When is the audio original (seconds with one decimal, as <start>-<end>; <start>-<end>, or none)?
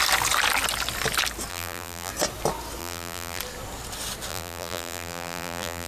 0.0-1.5; 2.1-2.8; 3.4-4.3